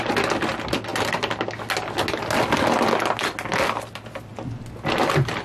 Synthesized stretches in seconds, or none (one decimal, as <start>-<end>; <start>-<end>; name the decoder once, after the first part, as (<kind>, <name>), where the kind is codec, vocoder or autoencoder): none